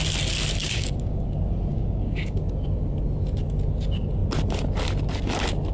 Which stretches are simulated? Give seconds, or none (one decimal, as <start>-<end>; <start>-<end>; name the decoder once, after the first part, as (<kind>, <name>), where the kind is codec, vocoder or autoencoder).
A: 0.6-1.2 (codec, DAC); 1.7-2.4